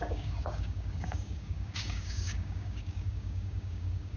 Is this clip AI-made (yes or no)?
yes